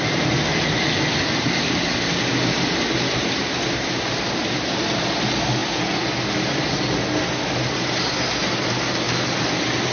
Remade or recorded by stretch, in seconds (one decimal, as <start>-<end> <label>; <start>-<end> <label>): 0.0-9.9 recorded